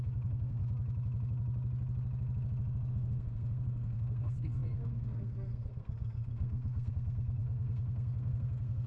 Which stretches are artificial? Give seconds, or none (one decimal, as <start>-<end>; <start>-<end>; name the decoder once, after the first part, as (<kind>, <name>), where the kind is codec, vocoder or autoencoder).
0.0-0.6 (codec, SNAC); 2.9-8.9